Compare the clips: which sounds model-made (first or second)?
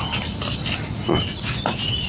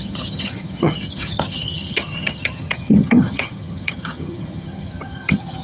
second